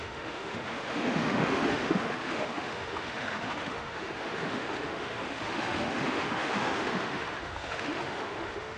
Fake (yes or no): yes